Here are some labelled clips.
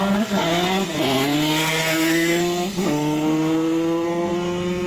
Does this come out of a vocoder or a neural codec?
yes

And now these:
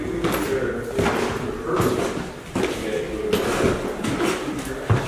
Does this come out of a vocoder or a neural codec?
no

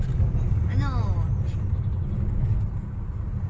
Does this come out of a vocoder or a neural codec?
no